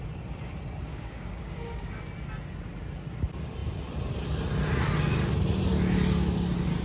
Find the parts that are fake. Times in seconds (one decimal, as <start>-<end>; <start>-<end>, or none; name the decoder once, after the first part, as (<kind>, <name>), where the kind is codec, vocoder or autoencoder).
0.9-2.0 (codec, DAC)